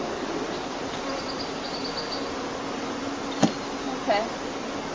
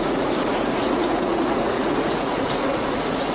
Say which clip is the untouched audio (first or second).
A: first